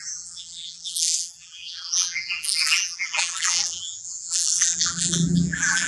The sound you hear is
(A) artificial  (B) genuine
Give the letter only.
A